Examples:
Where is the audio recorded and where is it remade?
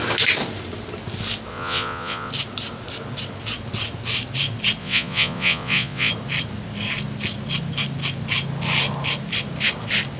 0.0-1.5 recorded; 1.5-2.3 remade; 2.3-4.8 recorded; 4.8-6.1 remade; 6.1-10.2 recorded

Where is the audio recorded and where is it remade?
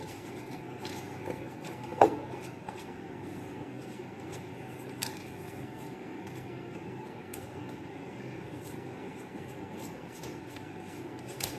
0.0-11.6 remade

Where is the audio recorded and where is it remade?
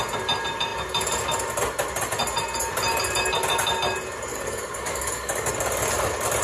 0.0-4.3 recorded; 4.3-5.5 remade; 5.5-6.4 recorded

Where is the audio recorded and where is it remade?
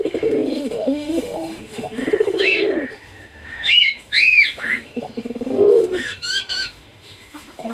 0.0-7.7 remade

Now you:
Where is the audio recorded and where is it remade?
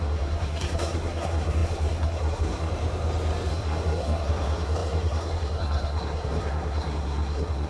0.0-2.7 remade; 2.7-3.5 recorded; 3.5-7.7 remade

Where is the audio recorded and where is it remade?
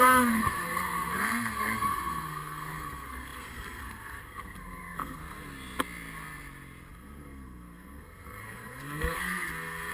0.0-5.2 remade; 5.2-6.9 recorded; 6.9-9.9 remade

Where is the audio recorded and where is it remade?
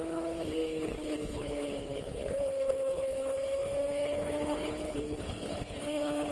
0.0-6.3 remade